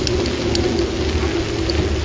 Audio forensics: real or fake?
real